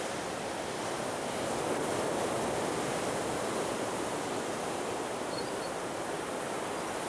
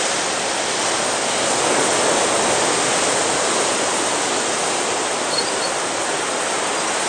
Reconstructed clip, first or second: first